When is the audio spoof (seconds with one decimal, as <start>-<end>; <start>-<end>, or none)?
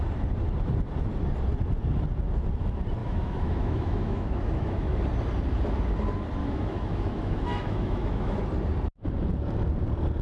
3.0-5.0; 6.4-8.4